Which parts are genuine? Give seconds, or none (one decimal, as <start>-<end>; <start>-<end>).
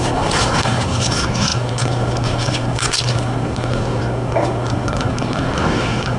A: none